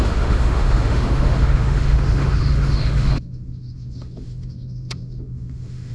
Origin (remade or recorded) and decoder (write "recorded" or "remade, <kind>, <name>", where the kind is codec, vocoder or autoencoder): remade, autoencoder, DAC-VAE